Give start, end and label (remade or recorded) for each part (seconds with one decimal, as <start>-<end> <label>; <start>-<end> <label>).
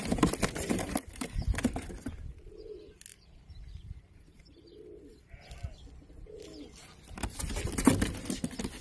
0.0-3.1 recorded; 3.1-5.3 remade; 5.3-8.8 recorded